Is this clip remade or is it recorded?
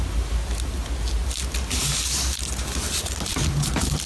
recorded